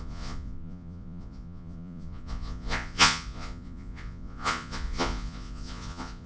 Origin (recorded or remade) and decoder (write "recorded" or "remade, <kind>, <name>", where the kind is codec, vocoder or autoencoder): remade, vocoder, Vocos